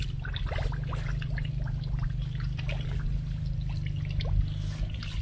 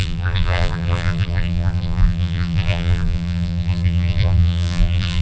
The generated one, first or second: second